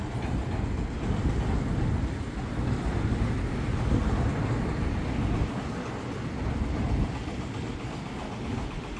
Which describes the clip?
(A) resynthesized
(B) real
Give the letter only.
B